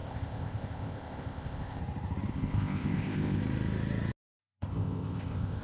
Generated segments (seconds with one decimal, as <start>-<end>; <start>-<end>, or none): 0.0-1.8; 2.3-3.4; 4.4-5.6